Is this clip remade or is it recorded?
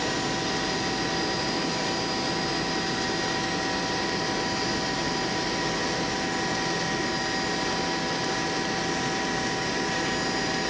recorded